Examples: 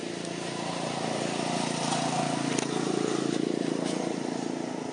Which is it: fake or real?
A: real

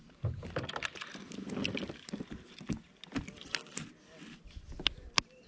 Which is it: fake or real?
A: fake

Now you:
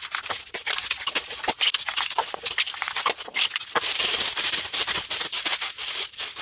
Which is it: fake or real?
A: fake